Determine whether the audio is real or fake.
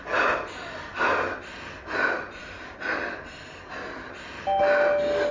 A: real